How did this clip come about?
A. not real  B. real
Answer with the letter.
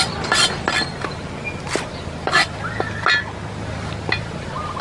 B